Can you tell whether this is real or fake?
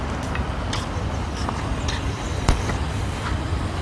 real